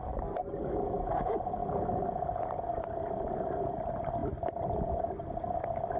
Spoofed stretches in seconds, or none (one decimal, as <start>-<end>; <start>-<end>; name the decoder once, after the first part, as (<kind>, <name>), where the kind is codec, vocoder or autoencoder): none